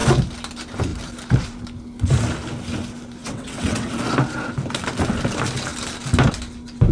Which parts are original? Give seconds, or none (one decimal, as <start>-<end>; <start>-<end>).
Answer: 0.0-3.2; 3.9-6.9